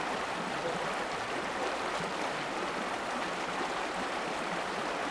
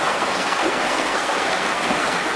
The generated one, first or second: second